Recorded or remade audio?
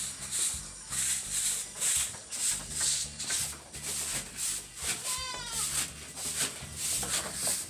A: recorded